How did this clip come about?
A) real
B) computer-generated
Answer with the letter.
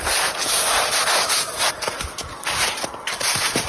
A